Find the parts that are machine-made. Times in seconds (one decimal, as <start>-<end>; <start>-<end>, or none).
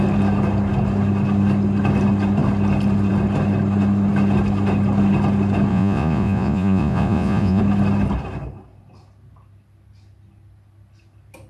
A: 5.7-7.6